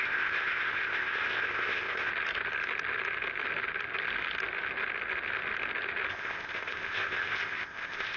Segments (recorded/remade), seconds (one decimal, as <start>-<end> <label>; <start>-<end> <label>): 0.0-2.1 remade; 2.1-6.1 recorded; 6.1-8.2 remade